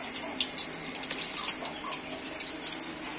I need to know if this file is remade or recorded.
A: recorded